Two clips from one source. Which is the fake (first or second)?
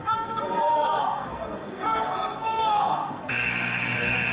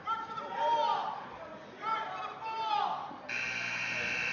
first